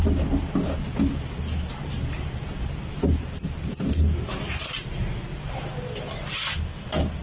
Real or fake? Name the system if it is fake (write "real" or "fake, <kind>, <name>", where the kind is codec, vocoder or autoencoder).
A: real